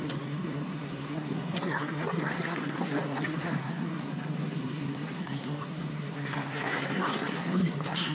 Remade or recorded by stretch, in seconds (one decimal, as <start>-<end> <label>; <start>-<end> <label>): 0.0-8.1 remade